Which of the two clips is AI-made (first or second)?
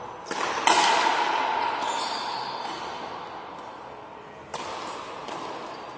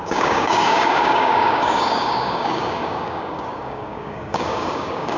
second